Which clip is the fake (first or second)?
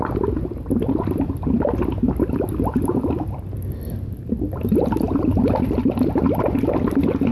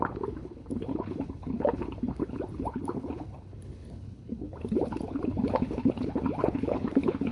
second